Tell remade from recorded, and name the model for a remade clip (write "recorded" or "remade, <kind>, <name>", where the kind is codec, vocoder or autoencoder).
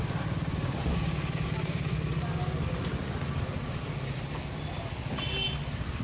recorded